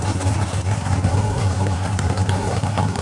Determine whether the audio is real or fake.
fake